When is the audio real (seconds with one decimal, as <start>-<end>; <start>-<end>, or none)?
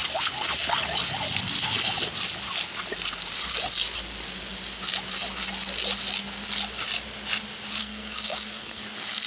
0.0-7.8; 8.8-9.3